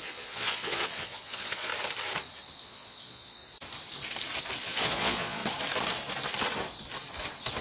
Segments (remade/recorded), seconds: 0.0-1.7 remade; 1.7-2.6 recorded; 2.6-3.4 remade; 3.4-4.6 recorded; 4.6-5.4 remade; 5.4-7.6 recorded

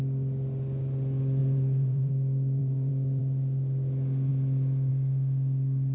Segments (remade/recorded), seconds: 0.0-1.4 recorded; 1.4-2.1 remade; 2.1-2.6 recorded; 2.6-3.2 remade; 3.2-5.9 recorded

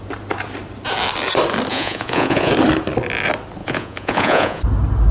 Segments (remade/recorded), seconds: 0.0-1.7 recorded; 1.7-2.5 remade; 2.5-3.6 recorded; 3.6-4.6 remade; 4.6-5.1 recorded

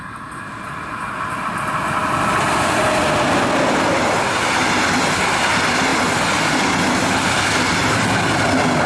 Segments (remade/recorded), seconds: 0.0-8.9 recorded

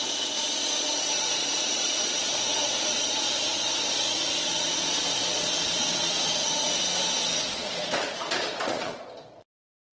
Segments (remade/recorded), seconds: 0.0-10.0 remade

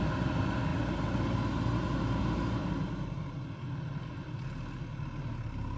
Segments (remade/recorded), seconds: 0.0-5.8 recorded

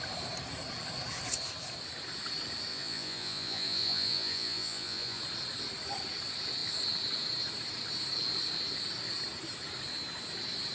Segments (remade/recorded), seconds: 0.0-2.7 recorded; 2.7-5.2 remade; 5.2-10.7 recorded